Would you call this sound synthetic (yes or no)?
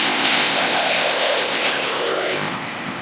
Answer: yes